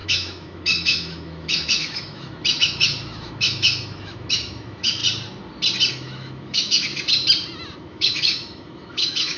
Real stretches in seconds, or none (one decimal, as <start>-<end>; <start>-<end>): 5.0-5.9; 6.9-7.8